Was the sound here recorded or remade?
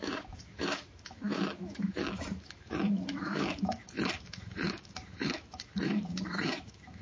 remade